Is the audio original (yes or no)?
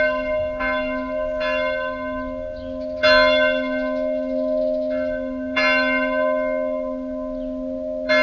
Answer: yes